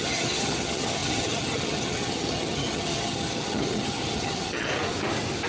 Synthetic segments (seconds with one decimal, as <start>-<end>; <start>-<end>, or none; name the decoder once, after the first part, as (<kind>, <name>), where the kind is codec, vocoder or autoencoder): 0.0-4.7 (vocoder, HiFi-GAN)